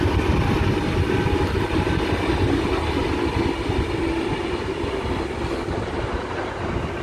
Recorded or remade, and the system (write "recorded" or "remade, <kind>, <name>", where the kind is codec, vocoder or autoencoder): recorded